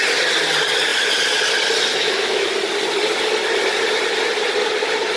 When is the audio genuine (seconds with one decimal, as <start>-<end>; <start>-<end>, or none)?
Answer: 0.0-1.9; 2.5-5.2